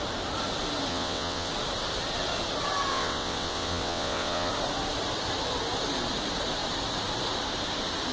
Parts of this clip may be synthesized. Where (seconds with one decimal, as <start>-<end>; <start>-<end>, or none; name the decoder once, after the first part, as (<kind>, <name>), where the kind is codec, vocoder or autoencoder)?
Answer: 0.9-1.5 (vocoder, WaveNeXt); 2.9-4.5